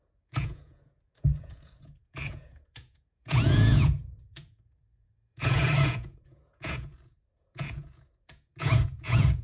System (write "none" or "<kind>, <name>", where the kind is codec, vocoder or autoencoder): vocoder, Vocos